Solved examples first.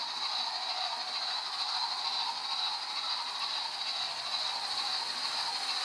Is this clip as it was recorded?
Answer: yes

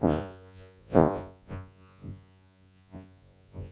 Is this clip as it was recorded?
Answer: no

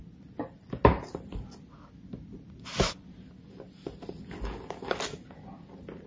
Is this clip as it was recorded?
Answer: yes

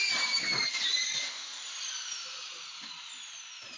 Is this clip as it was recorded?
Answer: yes